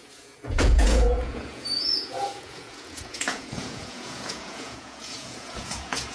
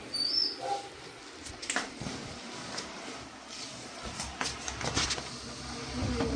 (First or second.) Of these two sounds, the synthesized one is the first